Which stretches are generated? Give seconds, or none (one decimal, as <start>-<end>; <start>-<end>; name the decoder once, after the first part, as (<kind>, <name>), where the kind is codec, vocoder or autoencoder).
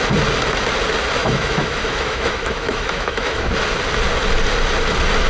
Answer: 1.2-3.5 (autoencoder, DAC-VAE)